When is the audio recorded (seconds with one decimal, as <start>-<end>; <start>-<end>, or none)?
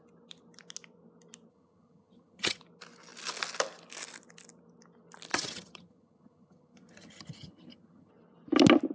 0.0-1.5; 2.6-5.3; 8.1-8.9